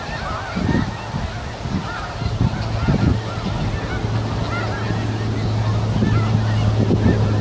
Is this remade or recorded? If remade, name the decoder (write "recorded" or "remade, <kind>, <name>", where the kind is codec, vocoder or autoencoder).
recorded